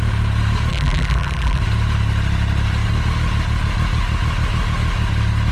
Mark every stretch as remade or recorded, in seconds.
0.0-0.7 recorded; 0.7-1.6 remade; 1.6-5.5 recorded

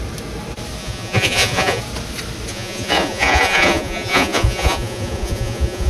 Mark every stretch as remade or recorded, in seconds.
0.0-0.8 recorded; 0.8-1.8 remade; 1.8-2.5 recorded; 2.5-5.9 remade